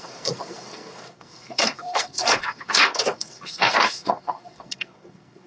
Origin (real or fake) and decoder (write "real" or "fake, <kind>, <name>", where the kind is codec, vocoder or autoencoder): fake, codec, SNAC